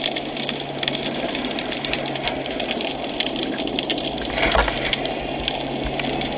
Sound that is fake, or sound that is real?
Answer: real